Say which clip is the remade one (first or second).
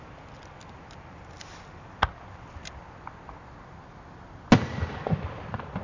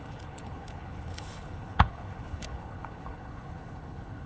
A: second